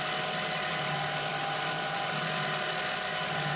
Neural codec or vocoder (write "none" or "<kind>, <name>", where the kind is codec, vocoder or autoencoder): none